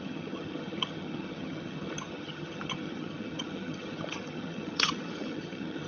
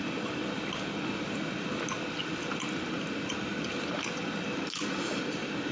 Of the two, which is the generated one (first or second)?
first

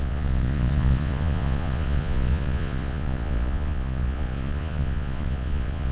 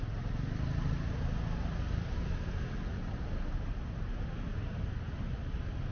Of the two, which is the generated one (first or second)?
first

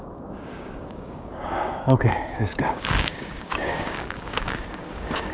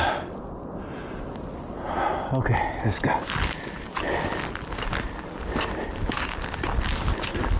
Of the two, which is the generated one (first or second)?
first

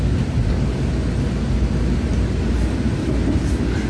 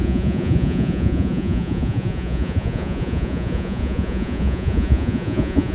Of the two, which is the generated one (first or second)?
second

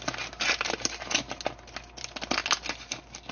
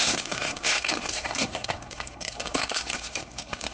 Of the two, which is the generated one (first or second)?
second